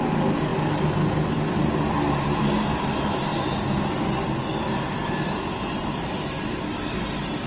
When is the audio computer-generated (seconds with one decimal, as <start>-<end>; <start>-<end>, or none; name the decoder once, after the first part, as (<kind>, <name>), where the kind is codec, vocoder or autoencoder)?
none